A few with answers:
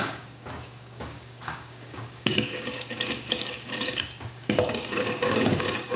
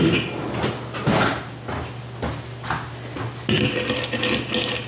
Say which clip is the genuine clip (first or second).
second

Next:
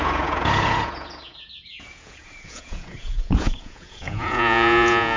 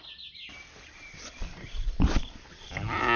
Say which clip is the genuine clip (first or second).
second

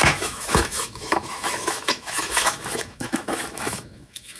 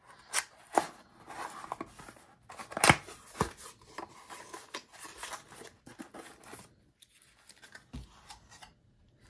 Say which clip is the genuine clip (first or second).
second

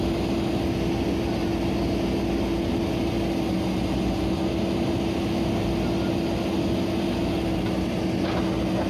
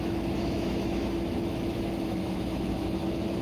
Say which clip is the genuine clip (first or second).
first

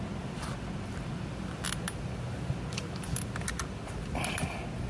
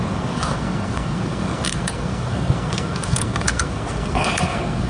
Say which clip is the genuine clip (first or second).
first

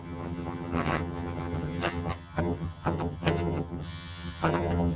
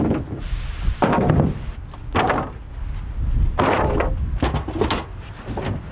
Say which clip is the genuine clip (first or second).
second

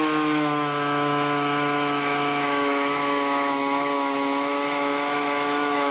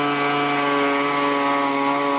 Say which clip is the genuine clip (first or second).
second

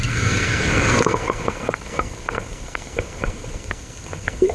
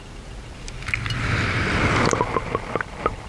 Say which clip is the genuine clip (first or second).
second